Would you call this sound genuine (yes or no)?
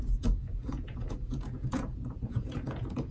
no